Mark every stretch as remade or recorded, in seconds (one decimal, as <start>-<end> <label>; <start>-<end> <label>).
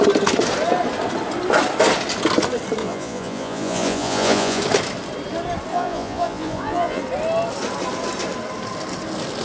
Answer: 0.0-2.8 recorded; 2.8-4.6 remade; 4.6-5.7 recorded; 5.7-7.0 remade; 7.0-9.4 recorded